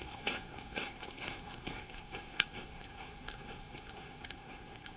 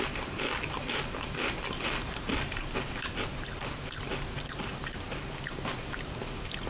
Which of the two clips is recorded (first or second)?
second